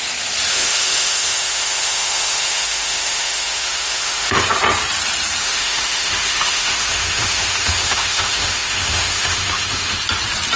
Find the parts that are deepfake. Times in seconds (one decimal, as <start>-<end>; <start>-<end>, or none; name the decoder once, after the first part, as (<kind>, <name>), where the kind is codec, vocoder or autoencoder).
0.5-4.4 (autoencoder, DAC-VAE); 5.4-10.0